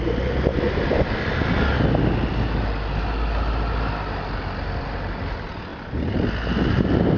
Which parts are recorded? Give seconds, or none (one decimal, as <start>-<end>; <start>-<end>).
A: 0.0-7.2